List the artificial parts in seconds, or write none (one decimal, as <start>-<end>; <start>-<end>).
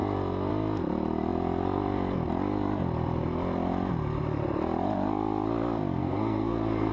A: 6.0-6.9